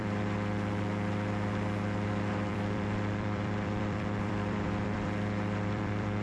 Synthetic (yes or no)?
yes